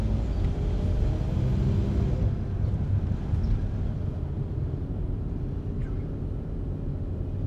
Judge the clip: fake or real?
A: real